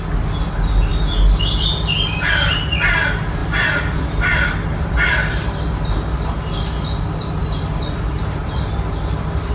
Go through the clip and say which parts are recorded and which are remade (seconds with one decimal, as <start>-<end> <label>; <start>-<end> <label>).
0.0-3.4 recorded; 3.4-5.5 remade; 5.5-7.4 recorded; 7.4-8.7 remade; 8.7-9.5 recorded